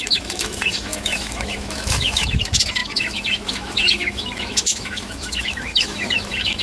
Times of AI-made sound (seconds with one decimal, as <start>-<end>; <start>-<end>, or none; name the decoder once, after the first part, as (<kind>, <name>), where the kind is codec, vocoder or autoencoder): 0.0-6.6 (autoencoder, DAC-VAE)